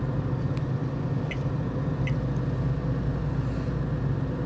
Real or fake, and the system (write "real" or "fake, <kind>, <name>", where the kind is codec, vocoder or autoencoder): real